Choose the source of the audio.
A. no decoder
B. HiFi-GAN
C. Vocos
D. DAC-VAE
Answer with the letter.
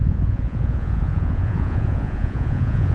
C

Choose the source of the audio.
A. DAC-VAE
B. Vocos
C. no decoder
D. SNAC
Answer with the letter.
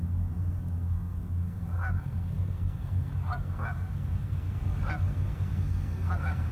D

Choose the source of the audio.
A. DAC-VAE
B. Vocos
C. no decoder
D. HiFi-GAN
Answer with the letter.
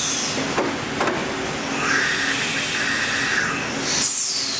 C